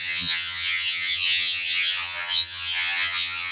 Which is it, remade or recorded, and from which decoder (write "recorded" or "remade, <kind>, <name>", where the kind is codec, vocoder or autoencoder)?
remade, vocoder, HiFi-GAN